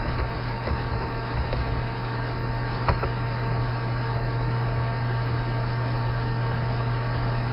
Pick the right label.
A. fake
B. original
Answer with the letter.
A